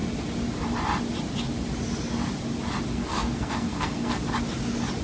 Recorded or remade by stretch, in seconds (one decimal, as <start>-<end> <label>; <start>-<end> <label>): 0.0-2.9 recorded; 2.9-4.2 remade; 4.2-5.0 recorded